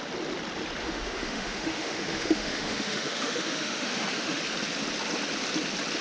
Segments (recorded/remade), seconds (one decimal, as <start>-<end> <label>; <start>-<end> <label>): 0.0-0.8 recorded; 0.8-4.4 remade; 4.4-6.0 recorded